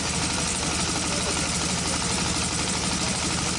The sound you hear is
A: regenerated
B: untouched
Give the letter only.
B